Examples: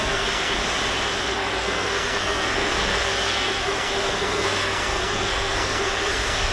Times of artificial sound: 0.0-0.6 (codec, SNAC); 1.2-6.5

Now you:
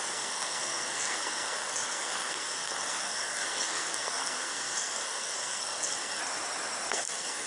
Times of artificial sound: 0.0-6.2 (codec, SNAC); 6.9-7.5

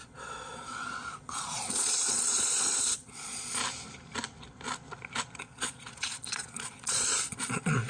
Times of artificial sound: 0.0-3.6 (vocoder, Vocos); 5.4-7.9

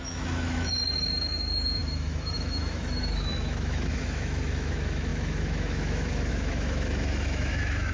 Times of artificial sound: 0.0-7.9 (autoencoder, DAC-VAE)

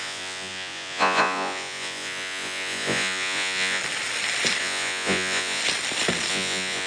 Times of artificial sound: 0.0-3.8 (vocoder, Vocos); 4.6-5.6; 6.3-6.9

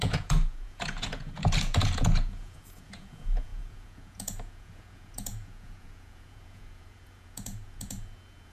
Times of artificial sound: 0.0-8.5 (vocoder, Vocos)

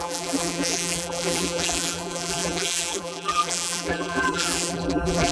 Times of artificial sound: 0.0-5.3 (vocoder, BigVGAN v2)

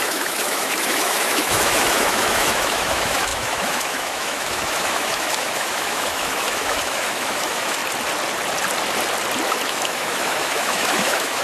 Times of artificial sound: 0.0-7.8 (autoencoder, DAC-VAE); 9.5-11.4